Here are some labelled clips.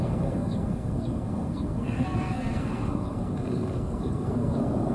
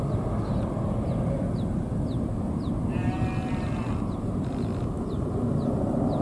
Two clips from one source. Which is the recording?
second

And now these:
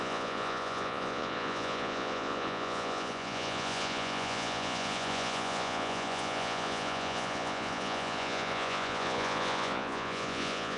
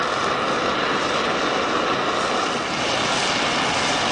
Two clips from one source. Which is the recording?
second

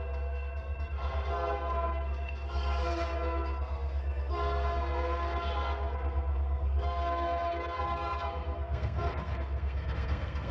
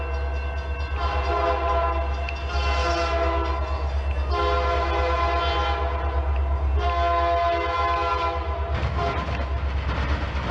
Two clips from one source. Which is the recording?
second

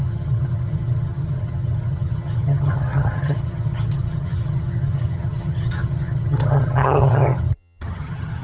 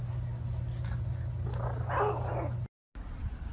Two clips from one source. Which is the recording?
second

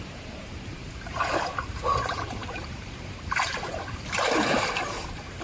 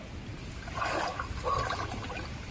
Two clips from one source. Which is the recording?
second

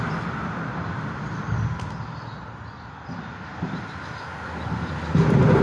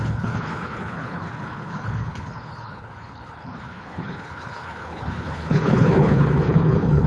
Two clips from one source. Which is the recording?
first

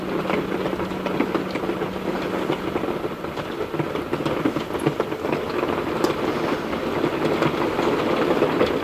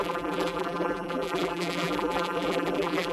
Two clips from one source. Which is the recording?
first